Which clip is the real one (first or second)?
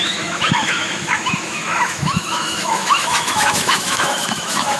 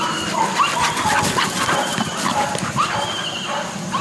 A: second